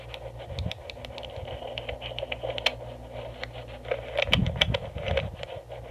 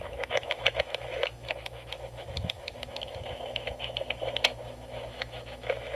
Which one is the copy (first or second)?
second